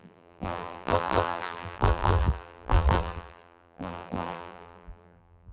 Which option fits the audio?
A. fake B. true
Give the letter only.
A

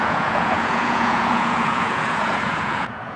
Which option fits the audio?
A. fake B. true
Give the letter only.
A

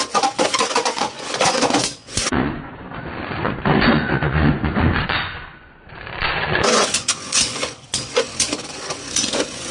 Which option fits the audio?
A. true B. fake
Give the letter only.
B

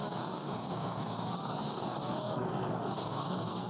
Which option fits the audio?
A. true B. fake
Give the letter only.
B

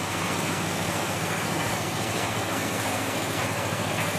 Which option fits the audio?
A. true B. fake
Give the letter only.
B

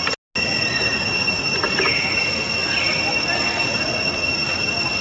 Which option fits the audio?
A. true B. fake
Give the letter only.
A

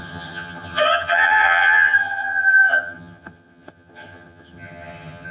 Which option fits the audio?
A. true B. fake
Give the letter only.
B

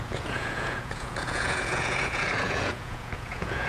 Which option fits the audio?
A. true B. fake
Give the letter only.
B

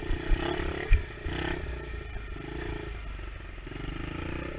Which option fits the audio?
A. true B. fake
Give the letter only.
A